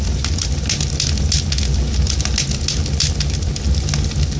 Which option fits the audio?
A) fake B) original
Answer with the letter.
B